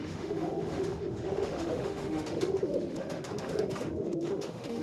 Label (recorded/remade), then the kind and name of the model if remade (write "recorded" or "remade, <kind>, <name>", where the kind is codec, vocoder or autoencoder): remade, autoencoder, DAC-VAE